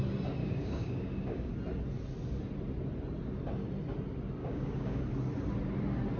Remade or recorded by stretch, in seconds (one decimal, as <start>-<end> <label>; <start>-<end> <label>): 0.0-0.4 recorded; 0.4-1.5 remade; 1.5-4.4 recorded; 4.4-5.0 remade; 5.0-6.2 recorded